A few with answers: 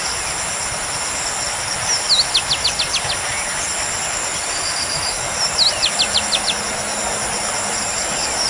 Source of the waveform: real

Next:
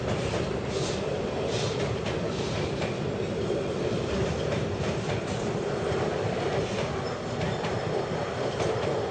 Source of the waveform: real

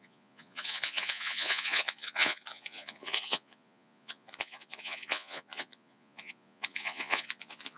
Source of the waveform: fake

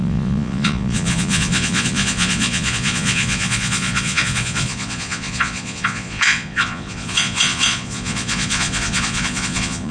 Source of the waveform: fake